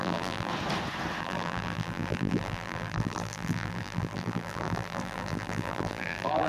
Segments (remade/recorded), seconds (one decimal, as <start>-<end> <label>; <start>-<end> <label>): 0.0-0.5 remade; 0.5-1.2 recorded; 1.2-6.5 remade